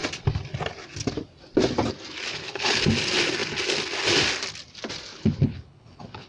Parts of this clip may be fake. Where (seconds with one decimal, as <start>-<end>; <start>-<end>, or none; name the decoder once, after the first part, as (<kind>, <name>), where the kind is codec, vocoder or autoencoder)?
2.3-2.8 (codec, HILCodec); 5.1-6.3